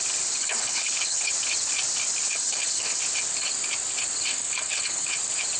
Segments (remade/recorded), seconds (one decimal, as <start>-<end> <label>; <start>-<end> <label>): 0.0-0.4 recorded; 0.4-1.3 remade; 1.3-2.3 recorded; 2.3-3.0 remade; 3.0-4.3 recorded; 4.3-5.1 remade; 5.1-5.6 recorded